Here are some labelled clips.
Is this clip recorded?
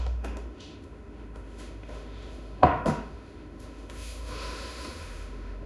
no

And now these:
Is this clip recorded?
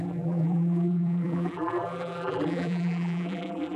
no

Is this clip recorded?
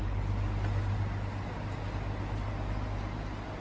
yes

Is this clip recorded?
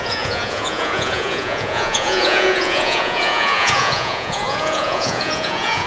no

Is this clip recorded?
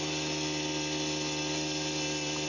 yes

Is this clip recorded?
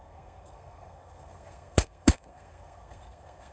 no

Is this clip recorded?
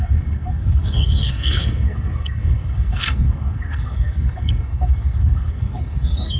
no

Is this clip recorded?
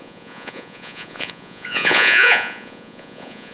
no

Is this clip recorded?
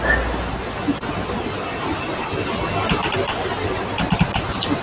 yes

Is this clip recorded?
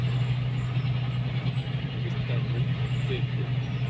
yes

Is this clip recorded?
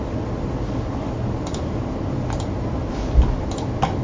yes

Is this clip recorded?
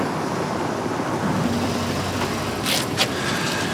yes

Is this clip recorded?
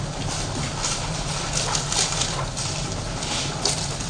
yes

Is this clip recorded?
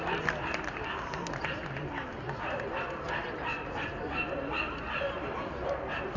yes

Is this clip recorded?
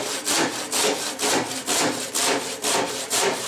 yes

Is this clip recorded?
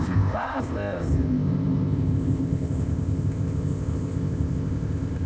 no